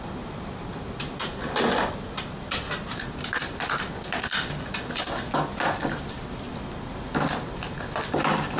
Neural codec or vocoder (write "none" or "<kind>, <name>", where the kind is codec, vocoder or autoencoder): none